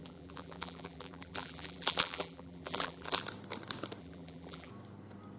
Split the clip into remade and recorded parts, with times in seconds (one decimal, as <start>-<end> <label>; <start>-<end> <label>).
0.0-3.2 remade; 3.2-4.0 recorded; 4.0-4.7 remade; 4.7-5.4 recorded